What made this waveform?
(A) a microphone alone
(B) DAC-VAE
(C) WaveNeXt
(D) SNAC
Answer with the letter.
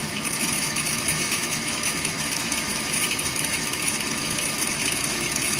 B